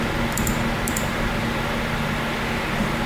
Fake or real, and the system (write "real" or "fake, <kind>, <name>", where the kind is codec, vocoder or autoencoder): fake, vocoder, BigVGAN v2